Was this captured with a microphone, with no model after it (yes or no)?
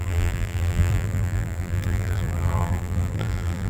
no